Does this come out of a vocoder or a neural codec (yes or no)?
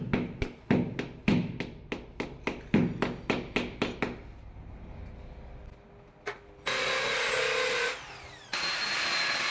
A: no